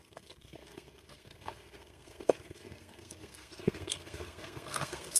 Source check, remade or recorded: remade